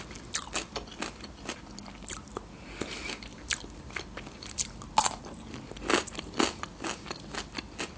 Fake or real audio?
real